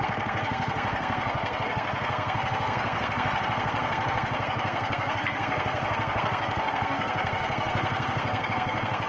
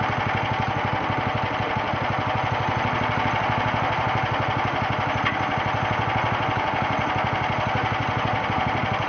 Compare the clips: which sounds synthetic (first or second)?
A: first